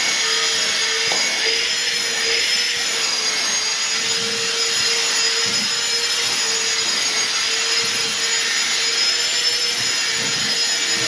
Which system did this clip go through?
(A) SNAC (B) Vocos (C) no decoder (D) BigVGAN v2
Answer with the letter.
C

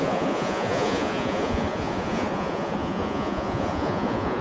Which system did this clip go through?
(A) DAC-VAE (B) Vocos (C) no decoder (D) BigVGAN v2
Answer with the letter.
B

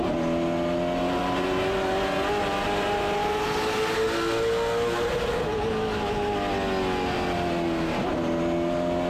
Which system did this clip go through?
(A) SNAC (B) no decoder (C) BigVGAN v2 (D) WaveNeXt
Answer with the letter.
B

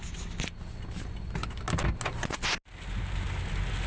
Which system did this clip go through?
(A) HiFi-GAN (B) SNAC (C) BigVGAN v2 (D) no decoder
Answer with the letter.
D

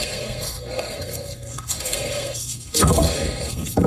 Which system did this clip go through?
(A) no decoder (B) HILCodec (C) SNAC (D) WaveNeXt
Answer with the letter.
C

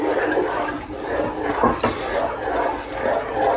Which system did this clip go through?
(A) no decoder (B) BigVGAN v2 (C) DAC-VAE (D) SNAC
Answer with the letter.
A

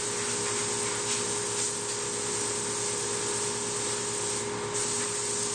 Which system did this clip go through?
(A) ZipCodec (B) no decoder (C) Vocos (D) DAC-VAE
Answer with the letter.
B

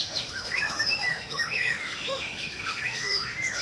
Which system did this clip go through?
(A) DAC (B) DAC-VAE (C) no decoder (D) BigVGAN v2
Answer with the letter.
B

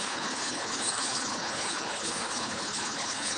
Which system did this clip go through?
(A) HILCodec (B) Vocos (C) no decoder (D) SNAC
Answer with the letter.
A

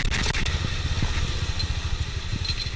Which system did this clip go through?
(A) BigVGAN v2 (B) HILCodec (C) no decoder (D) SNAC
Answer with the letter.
C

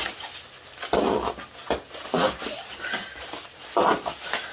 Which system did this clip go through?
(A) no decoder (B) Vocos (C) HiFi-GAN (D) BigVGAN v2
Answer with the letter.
A